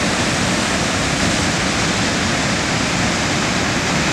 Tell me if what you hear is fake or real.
real